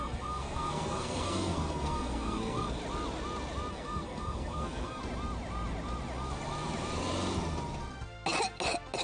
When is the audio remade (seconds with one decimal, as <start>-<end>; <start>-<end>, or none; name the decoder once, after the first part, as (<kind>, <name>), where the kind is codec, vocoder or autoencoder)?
0.0-2.8 (codec, SNAC); 3.7-5.0